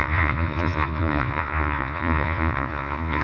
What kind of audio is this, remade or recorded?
remade